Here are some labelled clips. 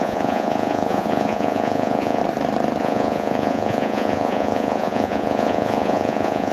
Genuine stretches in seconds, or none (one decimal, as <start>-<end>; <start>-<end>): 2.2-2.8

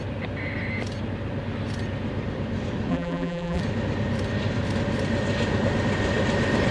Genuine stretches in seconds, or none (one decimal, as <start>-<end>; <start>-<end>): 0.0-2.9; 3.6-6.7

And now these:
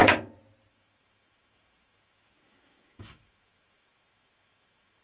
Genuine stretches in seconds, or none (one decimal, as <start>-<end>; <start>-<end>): 0.0-0.7

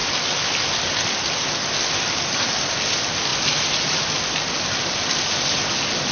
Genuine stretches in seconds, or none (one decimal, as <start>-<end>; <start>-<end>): 0.0-6.1

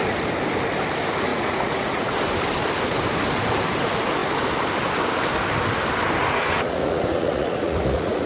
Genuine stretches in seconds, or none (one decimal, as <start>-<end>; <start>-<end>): 0.0-1.3; 2.0-6.2

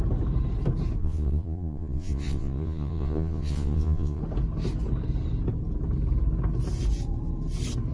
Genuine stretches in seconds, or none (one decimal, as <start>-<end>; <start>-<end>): 0.0-1.0; 4.2-7.9

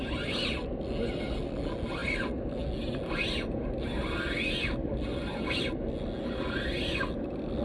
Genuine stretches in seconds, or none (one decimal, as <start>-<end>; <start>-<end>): 0.0-7.6

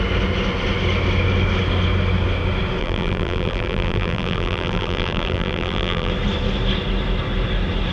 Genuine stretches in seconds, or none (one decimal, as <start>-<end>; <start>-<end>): 0.0-2.8; 6.1-7.9